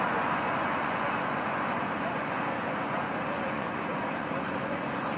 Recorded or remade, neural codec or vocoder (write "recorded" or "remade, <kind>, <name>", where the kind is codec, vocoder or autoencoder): remade, vocoder, Vocos